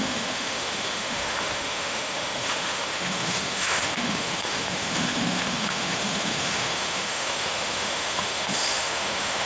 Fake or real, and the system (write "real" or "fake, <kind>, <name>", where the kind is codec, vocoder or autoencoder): fake, autoencoder, DAC-VAE